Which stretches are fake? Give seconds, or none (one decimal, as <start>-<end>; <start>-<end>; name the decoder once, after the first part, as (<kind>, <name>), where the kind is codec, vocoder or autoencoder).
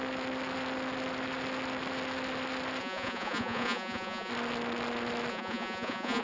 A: 2.8-4.3 (vocoder, Vocos); 5.3-6.2